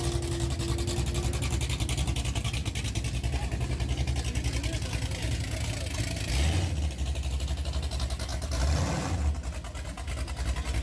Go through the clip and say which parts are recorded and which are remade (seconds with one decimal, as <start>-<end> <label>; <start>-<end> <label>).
0.0-10.8 recorded